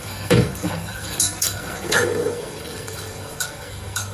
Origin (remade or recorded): remade